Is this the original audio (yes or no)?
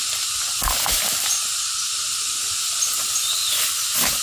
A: yes